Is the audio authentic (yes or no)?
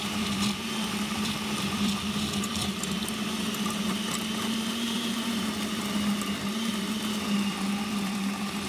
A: no